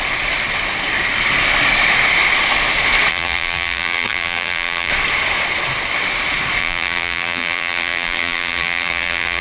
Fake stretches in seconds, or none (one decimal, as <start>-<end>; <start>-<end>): 3.1-4.9; 6.6-9.4